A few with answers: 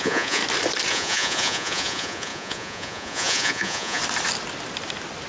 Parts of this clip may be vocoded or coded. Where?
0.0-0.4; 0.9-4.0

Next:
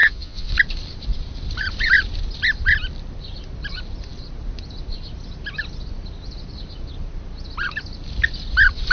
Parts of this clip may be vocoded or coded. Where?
0.0-0.5

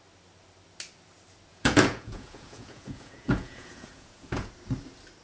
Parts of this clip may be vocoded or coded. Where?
1.5-4.5

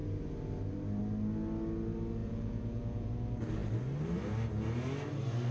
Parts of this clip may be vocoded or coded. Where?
2.2-3.1

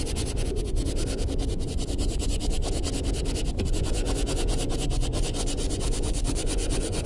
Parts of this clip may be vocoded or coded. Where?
0.0-0.8; 1.6-2.6; 3.6-7.1